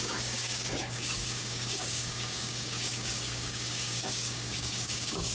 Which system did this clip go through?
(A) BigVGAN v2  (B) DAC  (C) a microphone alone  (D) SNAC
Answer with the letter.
B